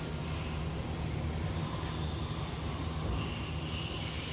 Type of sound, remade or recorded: recorded